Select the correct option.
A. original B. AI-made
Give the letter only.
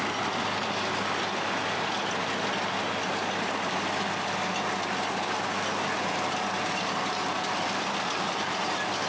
A